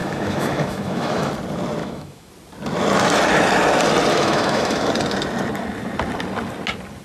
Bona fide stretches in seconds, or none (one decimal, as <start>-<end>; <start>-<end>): 1.3-1.8; 2.3-4.1; 4.9-7.0